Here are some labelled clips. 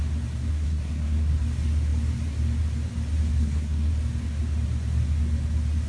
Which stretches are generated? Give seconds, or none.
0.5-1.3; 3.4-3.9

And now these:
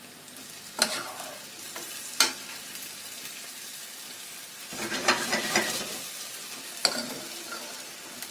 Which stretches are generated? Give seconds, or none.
5.9-6.8

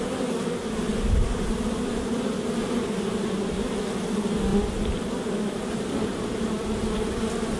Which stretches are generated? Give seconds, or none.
0.0-7.6

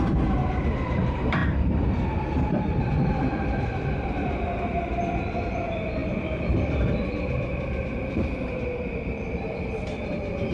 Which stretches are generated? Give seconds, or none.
0.0-10.5

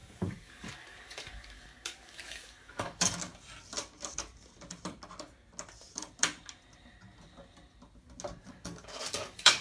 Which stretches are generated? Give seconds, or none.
0.0-3.3; 8.5-9.6

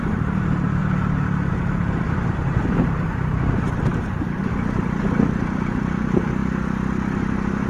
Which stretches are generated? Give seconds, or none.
0.0-0.8; 1.5-6.4

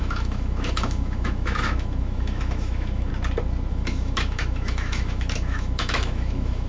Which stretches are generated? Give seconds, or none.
0.0-3.1; 3.7-6.7

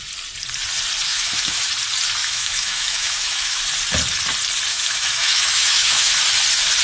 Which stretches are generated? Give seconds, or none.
1.1-1.7; 2.2-3.6; 4.7-6.1